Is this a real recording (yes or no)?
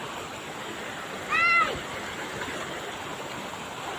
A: yes